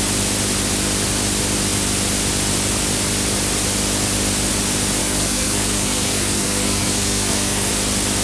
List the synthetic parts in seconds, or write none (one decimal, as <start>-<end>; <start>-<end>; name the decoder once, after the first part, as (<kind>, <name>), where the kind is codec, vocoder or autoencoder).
5.0-7.7 (codec, SNAC)